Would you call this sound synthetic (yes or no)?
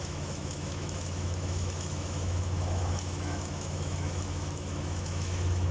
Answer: yes